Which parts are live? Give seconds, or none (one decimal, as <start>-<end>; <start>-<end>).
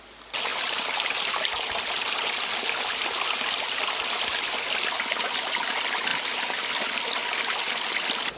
0.0-0.5; 2.8-6.1; 6.9-8.4